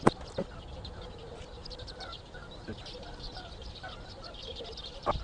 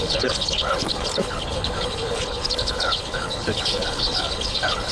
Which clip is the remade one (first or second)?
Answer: second